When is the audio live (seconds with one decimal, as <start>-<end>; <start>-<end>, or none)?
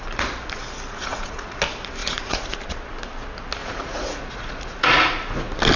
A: 0.0-1.0; 1.6-2.0; 2.5-3.6; 5.1-5.8